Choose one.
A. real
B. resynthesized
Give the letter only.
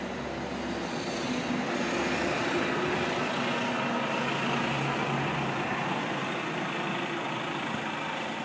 A